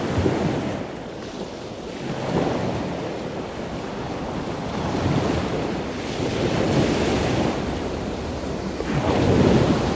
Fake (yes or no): no